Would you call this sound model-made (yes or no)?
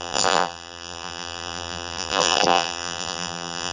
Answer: yes